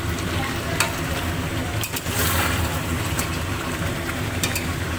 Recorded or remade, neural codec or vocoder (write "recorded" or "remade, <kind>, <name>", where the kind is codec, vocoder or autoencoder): remade, vocoder, BigVGAN v2